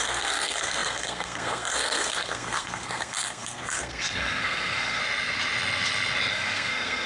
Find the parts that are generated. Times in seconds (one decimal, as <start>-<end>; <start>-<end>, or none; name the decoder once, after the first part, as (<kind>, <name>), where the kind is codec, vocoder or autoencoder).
0.0-5.0 (codec, SNAC); 6.3-7.1